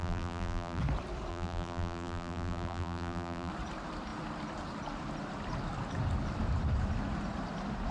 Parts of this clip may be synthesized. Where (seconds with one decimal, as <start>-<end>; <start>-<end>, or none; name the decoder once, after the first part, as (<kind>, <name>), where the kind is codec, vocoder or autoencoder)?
0.0-0.8 (vocoder, BigVGAN v2); 1.3-3.5